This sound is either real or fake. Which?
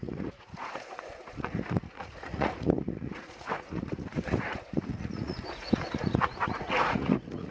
fake